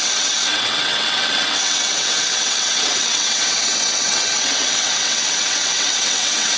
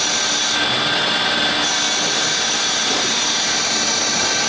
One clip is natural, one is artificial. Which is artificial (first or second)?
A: first